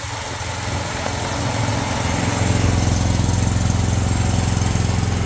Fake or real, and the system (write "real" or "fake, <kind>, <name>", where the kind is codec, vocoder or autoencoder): real